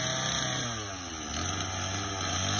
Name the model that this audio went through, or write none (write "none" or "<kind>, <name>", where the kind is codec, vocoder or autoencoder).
none